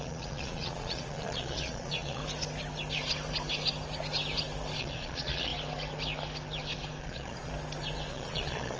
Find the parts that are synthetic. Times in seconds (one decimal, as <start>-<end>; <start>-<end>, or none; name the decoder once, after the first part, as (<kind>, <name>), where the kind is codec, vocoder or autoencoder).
0.0-2.2 (vocoder, Vocos); 4.8-5.5; 7.0-7.5; 8.1-8.8

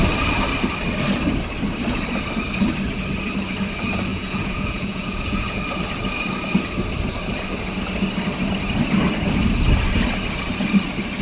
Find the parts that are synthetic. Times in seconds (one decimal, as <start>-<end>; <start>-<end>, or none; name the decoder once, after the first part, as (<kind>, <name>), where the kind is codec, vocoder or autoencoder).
4.1-5.6 (vocoder, Vocos)

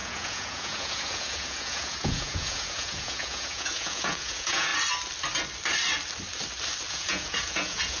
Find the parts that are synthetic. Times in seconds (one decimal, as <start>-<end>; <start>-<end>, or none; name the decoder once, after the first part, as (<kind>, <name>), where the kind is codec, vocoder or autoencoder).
0.0-4.7 (vocoder, Vocos); 6.9-8.0

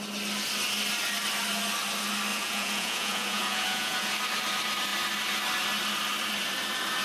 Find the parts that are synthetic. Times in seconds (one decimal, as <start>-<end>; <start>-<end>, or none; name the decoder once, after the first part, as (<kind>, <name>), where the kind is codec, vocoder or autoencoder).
2.3-4.1 (vocoder, Vocos)

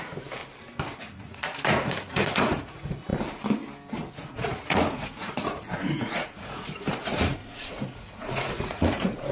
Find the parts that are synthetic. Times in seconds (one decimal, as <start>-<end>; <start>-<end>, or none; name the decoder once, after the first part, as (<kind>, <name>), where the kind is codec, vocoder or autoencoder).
0.0-0.4 (vocoder, Vocos); 1.0-3.1; 4.1-9.3

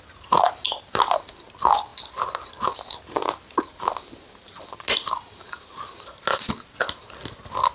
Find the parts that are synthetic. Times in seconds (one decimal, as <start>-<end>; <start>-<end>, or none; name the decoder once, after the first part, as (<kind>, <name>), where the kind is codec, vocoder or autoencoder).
none

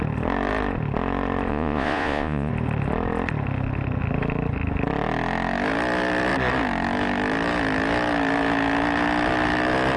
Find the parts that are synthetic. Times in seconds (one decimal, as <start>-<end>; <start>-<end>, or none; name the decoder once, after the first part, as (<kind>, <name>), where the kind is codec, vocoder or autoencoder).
1.5-2.5 (vocoder, Vocos)

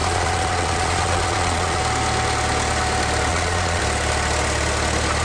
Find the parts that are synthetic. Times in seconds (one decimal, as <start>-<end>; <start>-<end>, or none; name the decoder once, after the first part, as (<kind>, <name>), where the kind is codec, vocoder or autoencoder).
0.0-1.8 (vocoder, Vocos); 3.3-3.8